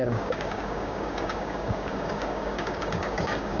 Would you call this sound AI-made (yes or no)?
yes